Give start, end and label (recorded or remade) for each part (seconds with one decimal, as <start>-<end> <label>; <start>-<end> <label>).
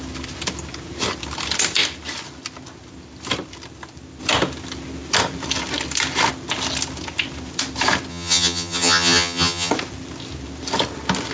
0.0-8.1 recorded; 8.1-9.7 remade; 9.7-11.3 recorded